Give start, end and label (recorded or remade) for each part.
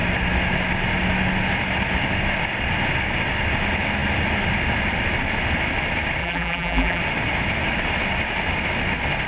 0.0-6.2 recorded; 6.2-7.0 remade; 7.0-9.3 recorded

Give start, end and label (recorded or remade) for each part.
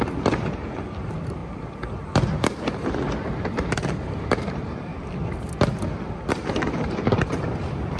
0.0-1.4 remade; 1.4-2.6 recorded; 2.6-4.9 remade; 4.9-6.3 recorded; 6.3-8.0 remade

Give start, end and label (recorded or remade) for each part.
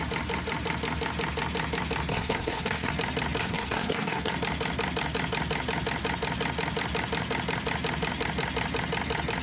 0.0-2.1 recorded; 2.1-2.9 remade; 2.9-3.4 recorded; 3.4-4.3 remade; 4.3-9.4 recorded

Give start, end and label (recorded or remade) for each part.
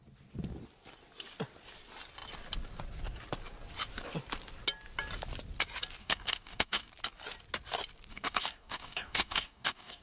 0.0-6.0 recorded; 6.0-6.9 remade; 6.9-8.1 recorded; 8.1-10.0 remade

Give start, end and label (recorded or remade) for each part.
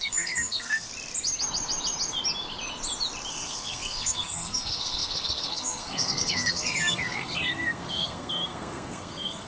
0.0-0.9 remade; 0.9-3.3 recorded; 3.3-9.5 remade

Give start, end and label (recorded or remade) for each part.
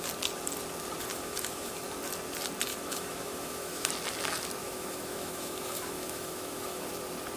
0.0-1.1 recorded; 1.1-1.7 remade; 1.7-2.7 recorded; 2.7-3.9 remade; 3.9-4.6 recorded; 4.6-6.9 remade; 6.9-7.4 recorded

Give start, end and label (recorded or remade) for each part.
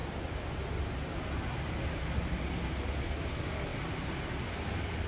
0.0-5.1 recorded